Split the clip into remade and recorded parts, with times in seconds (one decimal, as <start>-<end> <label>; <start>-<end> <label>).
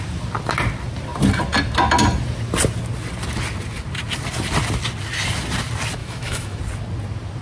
0.0-6.0 recorded; 6.0-6.6 remade; 6.6-7.4 recorded